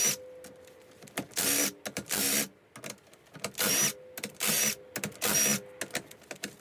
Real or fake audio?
real